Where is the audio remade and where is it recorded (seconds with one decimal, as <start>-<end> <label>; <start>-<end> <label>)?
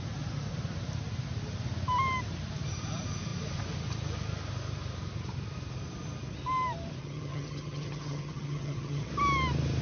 0.0-7.0 recorded; 7.0-9.1 remade; 9.1-9.8 recorded